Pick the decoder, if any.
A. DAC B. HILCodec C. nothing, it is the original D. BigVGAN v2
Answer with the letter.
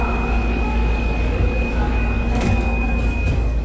A